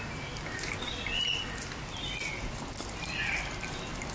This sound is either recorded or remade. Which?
recorded